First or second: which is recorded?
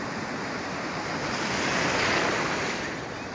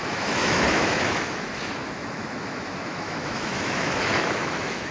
first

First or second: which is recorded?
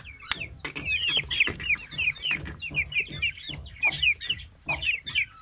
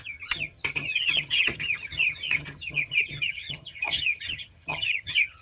first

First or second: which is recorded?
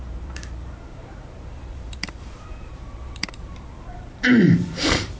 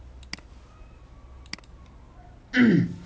second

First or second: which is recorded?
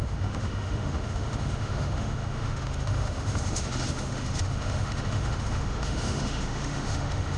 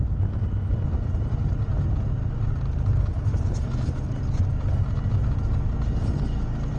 second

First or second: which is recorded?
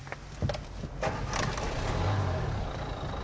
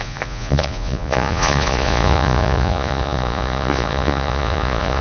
first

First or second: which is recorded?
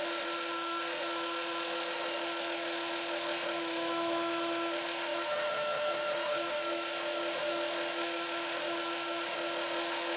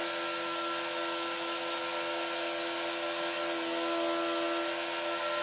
second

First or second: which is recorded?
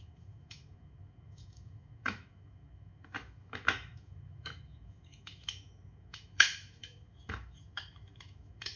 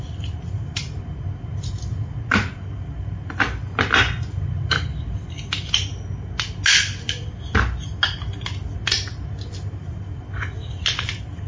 second